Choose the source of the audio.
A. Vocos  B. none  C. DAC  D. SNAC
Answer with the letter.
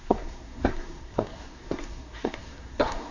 D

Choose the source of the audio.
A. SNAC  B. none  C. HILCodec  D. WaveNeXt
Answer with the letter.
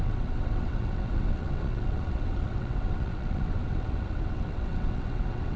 D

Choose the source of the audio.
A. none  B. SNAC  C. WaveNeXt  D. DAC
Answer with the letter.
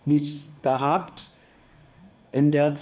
B